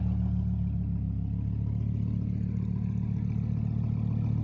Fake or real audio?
real